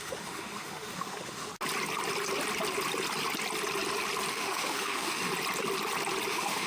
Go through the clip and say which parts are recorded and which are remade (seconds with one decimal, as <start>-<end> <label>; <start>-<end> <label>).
0.0-1.5 remade; 1.5-4.3 recorded; 4.3-5.3 remade; 5.3-6.3 recorded; 6.3-6.7 remade